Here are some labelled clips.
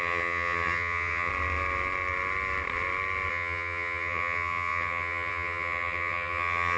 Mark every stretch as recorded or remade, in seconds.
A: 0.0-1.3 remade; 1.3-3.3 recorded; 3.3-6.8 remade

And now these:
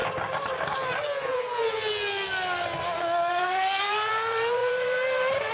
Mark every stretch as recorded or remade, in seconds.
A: 0.0-3.3 recorded; 3.3-5.5 remade